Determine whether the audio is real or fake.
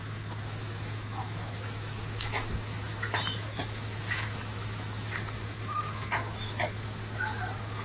fake